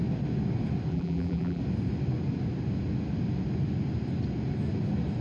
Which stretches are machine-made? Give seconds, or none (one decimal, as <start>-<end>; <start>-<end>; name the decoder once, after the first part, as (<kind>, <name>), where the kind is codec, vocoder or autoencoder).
0.9-1.6 (vocoder, BigVGAN v2)